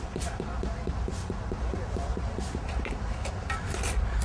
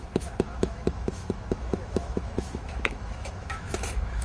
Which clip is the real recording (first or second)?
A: first